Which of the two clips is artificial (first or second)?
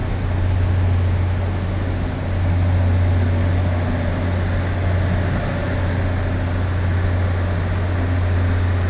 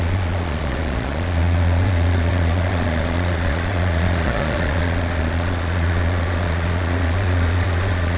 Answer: second